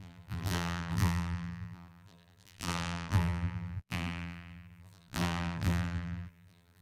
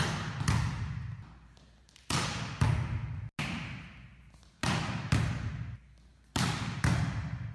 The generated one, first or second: first